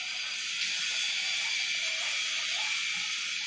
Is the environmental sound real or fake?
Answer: real